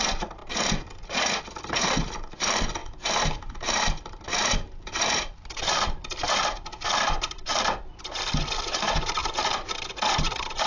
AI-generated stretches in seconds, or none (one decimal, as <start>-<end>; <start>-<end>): 0.0-10.7